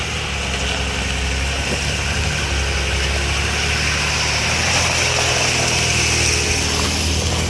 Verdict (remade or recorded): recorded